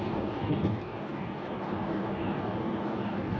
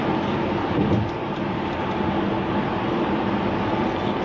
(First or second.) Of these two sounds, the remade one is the first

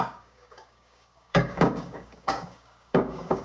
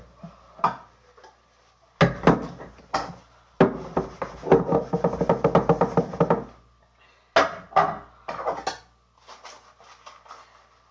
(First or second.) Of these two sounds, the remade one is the first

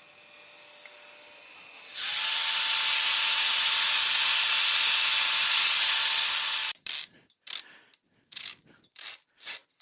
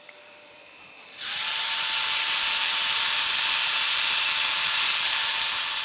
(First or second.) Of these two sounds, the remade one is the second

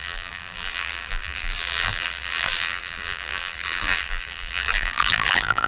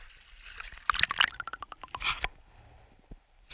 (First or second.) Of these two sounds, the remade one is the first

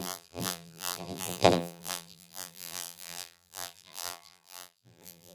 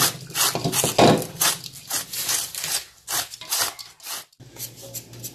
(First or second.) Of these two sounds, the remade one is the first